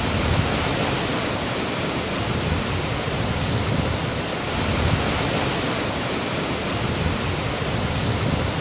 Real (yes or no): yes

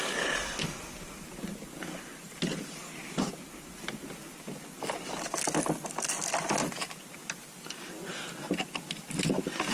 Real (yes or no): yes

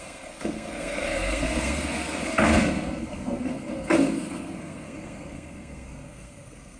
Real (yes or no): no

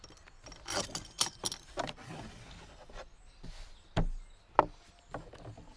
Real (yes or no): yes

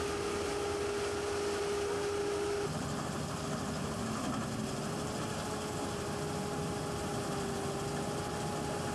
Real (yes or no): yes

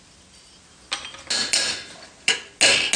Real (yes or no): yes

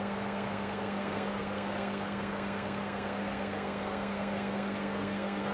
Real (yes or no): no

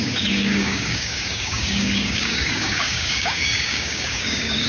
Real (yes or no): no